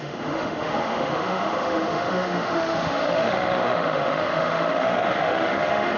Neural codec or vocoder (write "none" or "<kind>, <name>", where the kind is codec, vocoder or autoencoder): autoencoder, DAC-VAE